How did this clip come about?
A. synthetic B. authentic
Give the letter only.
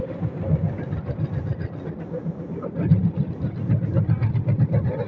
B